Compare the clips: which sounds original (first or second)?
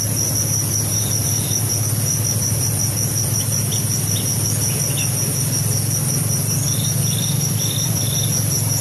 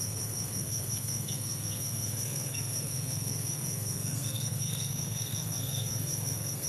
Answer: first